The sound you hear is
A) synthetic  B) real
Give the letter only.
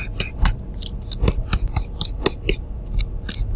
B